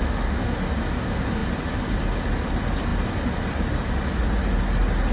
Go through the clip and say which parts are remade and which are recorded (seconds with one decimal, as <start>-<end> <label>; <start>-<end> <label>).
0.0-0.5 remade; 0.5-5.1 recorded